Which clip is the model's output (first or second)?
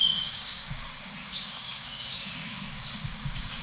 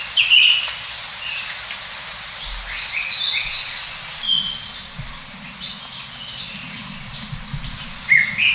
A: first